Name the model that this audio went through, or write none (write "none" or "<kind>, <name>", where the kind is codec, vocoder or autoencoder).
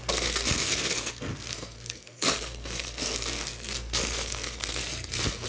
codec, SNAC